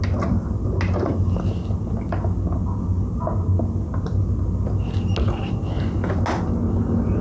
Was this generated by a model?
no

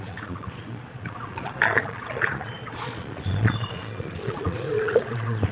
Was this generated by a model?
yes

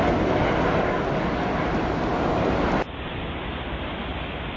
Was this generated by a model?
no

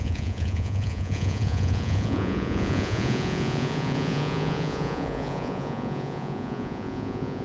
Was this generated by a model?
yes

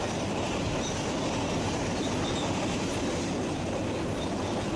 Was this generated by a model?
no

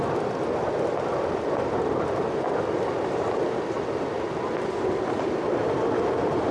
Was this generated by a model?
no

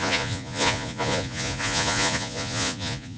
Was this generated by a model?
yes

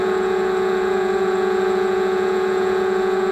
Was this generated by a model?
yes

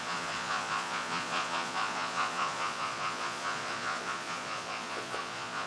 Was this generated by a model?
yes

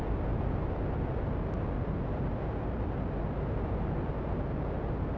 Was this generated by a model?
no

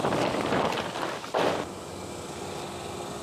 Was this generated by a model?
no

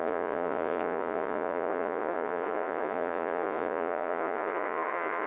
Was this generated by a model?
yes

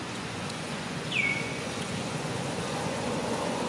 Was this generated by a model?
yes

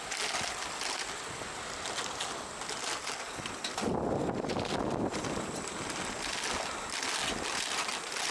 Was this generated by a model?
no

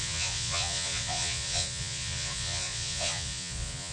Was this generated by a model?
yes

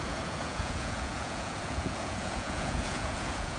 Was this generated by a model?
yes